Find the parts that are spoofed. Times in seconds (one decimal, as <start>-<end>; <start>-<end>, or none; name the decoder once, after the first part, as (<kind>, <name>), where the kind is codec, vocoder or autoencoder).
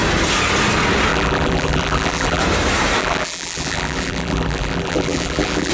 1.1-2.4 (vocoder, BigVGAN v2); 3.0-5.7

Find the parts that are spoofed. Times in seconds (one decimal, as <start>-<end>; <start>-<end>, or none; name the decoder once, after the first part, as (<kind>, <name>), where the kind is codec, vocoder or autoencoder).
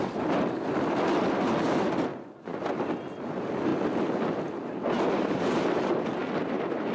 2.1-2.6 (vocoder, Vocos)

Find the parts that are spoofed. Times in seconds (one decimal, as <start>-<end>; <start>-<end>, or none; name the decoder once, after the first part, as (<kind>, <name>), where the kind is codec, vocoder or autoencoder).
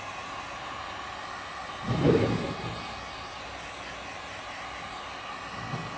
none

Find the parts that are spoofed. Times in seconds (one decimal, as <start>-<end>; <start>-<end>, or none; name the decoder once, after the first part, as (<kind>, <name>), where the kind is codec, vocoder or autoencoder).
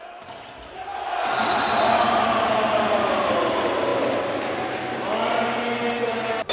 none